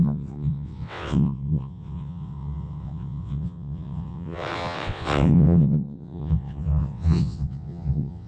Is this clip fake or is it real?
fake